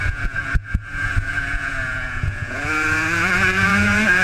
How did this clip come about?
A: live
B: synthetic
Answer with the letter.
B